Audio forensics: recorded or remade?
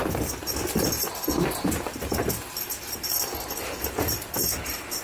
recorded